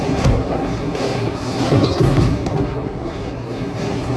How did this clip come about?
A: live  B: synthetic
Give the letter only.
B